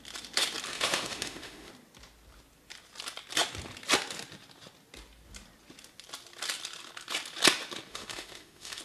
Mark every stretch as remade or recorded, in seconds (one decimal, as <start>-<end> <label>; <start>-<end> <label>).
0.0-0.7 recorded; 0.7-1.7 remade; 1.7-7.9 recorded; 7.9-8.8 remade

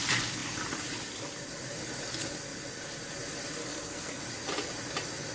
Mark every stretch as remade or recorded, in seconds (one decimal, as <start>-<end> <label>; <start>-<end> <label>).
0.0-3.6 recorded; 3.6-4.2 remade; 4.2-5.3 recorded

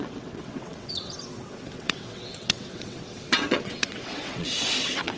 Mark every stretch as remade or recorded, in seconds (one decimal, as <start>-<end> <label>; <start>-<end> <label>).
0.0-5.2 remade

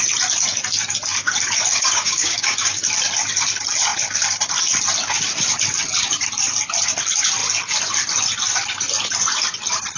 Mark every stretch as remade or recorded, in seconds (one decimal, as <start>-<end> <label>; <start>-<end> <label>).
0.0-1.7 recorded; 1.7-2.8 remade; 2.8-10.0 recorded

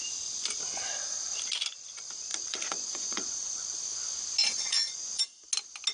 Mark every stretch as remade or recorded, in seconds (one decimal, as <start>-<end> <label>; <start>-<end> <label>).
0.0-2.3 recorded; 2.3-3.6 remade; 3.6-4.4 recorded; 4.4-5.2 remade; 5.2-5.9 recorded